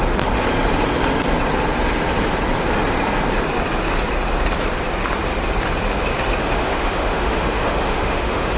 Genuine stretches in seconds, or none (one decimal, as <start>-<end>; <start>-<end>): 0.0-6.4